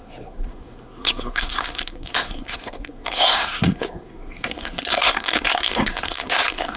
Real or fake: fake